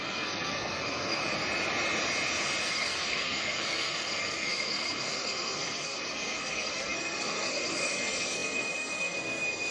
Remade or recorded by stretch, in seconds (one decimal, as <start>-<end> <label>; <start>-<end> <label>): 0.0-1.2 remade; 1.2-2.6 recorded; 2.6-9.7 remade